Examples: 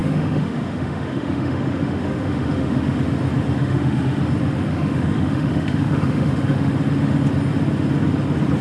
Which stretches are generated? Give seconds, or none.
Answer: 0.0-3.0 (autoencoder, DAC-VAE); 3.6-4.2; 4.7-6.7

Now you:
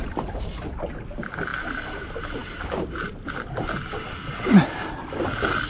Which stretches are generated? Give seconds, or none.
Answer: none

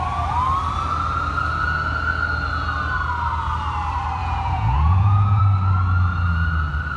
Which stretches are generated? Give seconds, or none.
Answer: 4.2-5.4 (vocoder, Vocos)

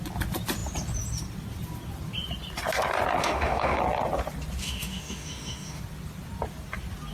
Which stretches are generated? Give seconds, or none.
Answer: 3.2-3.8 (autoencoder, DAC-VAE); 4.6-5.8